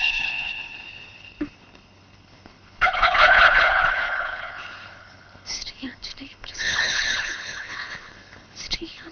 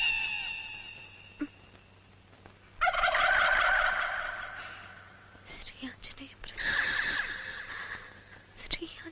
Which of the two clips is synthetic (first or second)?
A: first